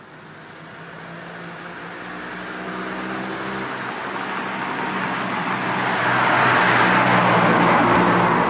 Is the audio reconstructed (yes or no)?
no